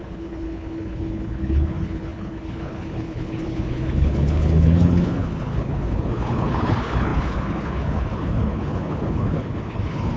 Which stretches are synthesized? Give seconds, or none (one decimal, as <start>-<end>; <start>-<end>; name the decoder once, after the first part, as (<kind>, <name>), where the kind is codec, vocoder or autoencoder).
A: 0.0-10.2 (codec, HILCodec)